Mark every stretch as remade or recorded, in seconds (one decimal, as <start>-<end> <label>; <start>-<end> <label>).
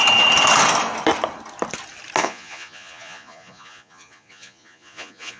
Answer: 0.0-2.2 recorded; 2.2-5.4 remade